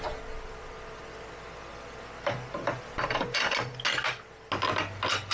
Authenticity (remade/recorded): recorded